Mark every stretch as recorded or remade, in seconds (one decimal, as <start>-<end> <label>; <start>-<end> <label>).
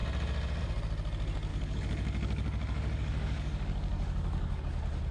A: 0.0-1.5 recorded; 1.5-4.6 remade; 4.6-5.1 recorded